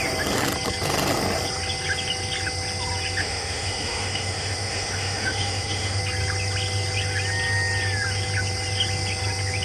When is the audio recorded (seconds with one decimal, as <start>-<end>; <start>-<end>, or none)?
0.0-3.2; 6.0-9.6

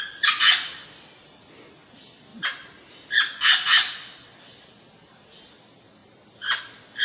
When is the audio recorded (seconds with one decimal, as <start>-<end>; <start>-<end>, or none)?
0.0-2.3; 2.9-7.0

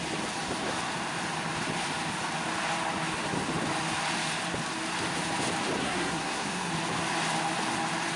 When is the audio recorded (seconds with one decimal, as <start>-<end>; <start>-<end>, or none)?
0.0-5.8; 6.7-8.2

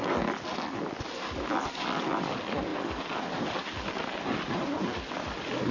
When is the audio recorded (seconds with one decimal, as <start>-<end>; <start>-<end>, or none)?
0.0-5.7

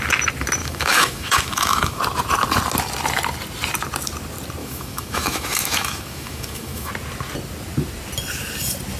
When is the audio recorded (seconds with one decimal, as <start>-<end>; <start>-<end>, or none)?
0.0-0.6; 2.0-4.6; 6.9-9.0